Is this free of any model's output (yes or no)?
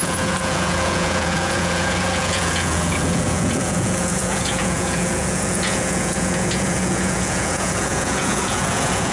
no